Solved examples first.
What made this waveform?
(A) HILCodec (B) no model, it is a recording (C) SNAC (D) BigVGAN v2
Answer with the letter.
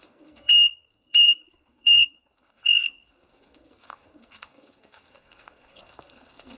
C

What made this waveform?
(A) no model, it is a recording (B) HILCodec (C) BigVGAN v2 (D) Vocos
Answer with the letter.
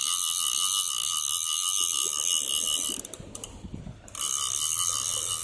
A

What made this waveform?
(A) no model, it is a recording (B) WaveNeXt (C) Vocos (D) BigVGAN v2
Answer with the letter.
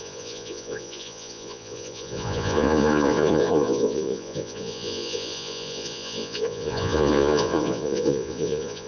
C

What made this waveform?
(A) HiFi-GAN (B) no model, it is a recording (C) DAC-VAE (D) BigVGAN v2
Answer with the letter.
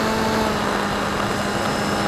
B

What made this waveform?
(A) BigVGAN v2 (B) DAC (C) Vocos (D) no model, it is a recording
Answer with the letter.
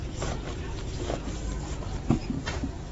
D